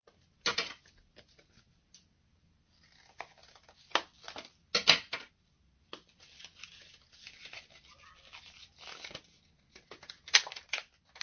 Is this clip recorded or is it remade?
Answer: recorded